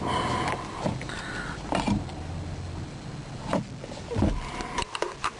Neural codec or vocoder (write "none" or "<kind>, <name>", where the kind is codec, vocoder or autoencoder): none